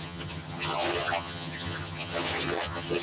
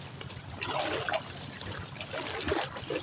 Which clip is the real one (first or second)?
second